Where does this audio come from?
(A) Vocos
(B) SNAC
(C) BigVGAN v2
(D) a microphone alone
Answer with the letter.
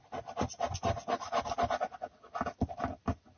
D